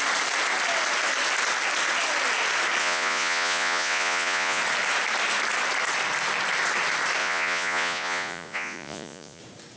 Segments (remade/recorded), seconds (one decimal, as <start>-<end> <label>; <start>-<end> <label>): 0.0-2.8 recorded; 2.8-4.6 remade; 4.6-7.2 recorded; 7.2-9.4 remade; 9.4-9.8 recorded